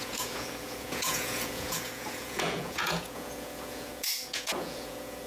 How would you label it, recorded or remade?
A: remade